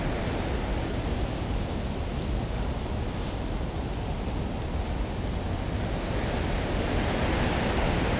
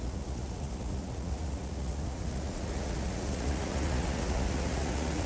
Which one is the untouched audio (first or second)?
first